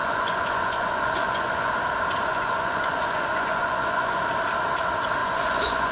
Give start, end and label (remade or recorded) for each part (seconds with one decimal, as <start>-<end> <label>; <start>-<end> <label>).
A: 0.0-1.7 remade; 1.7-2.3 recorded; 2.3-4.2 remade; 4.2-5.2 recorded; 5.2-5.9 remade